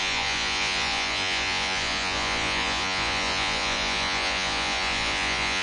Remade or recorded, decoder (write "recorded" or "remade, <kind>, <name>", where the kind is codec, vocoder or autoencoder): remade, vocoder, Vocos